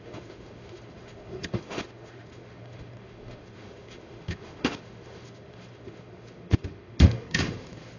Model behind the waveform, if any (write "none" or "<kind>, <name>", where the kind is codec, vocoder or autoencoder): autoencoder, DAC-VAE